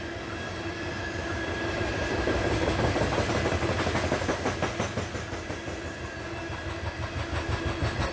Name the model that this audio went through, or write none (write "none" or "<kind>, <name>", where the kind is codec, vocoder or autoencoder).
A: none